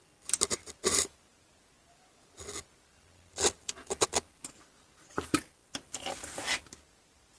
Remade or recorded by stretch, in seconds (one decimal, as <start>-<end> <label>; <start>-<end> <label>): 0.0-7.4 recorded